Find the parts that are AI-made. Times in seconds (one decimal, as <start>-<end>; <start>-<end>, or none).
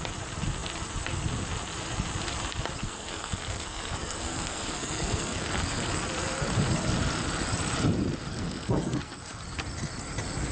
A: 2.8-6.0; 8.3-9.4